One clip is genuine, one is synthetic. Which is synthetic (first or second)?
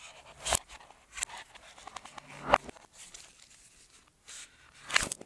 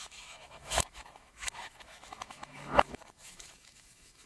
second